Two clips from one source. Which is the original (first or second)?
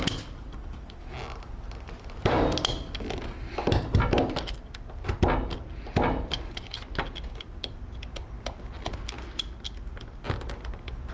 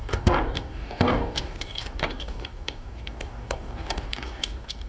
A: first